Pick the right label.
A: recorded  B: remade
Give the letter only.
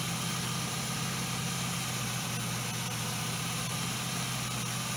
A